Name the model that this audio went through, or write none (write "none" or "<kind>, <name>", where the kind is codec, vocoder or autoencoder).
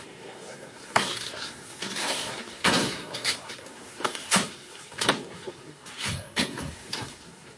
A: codec, SNAC